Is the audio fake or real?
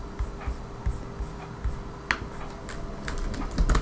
real